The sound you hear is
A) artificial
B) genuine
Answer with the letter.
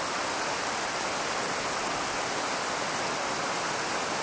B